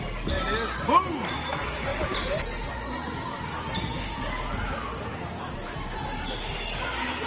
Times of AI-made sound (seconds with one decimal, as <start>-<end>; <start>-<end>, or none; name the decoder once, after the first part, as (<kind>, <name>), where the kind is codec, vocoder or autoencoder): none